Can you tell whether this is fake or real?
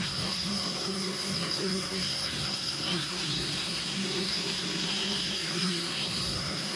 fake